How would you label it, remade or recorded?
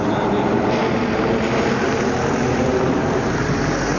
recorded